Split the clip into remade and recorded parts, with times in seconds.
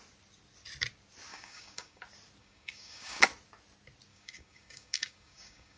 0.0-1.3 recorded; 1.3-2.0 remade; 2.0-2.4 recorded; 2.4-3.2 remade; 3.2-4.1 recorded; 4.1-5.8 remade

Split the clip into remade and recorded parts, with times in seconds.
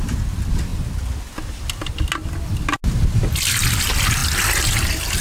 0.0-5.2 recorded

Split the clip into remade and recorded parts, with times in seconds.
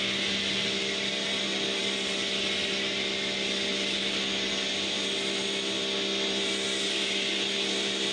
0.0-8.1 recorded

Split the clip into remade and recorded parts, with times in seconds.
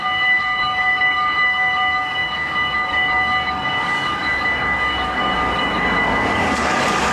0.0-7.1 remade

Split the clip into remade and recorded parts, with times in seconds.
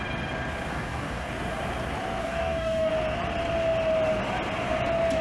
0.0-0.7 recorded; 0.7-1.3 remade; 1.3-2.2 recorded; 2.2-2.9 remade; 2.9-5.2 recorded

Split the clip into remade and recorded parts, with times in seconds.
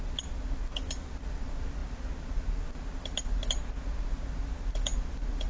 0.0-5.5 recorded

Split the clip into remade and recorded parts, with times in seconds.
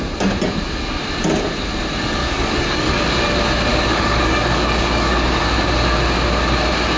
0.0-2.2 recorded; 2.2-3.1 remade; 3.1-3.7 recorded; 3.7-5.4 remade; 5.4-7.0 recorded